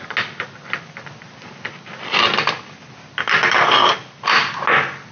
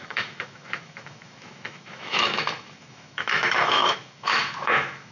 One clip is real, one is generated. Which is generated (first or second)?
second